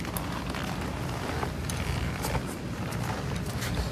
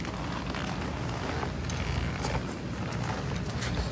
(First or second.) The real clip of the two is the second